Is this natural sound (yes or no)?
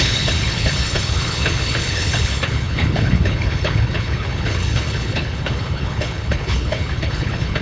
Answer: no